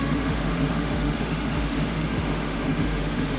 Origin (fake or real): fake